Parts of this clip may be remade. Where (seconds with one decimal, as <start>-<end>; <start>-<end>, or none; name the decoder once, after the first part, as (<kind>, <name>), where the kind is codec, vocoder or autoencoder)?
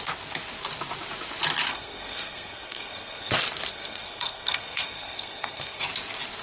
1.7-3.3 (codec, SNAC); 3.7-5.8